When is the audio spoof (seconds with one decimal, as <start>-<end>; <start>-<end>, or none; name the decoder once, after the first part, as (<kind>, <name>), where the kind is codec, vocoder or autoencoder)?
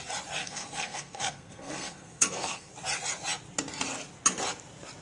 0.4-2.7 (codec, SNAC)